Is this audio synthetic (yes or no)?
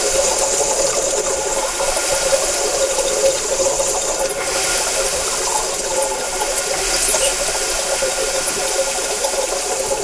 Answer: no